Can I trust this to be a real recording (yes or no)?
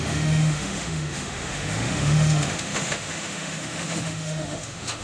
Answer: no